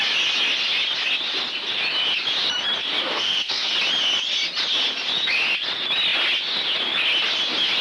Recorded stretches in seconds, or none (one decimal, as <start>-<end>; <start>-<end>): 0.0-3.1; 3.7-7.8